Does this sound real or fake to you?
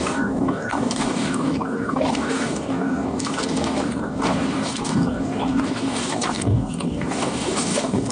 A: fake